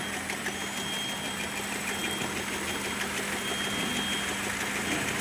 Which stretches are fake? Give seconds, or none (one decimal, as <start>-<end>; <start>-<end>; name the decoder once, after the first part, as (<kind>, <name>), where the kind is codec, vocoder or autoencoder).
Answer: none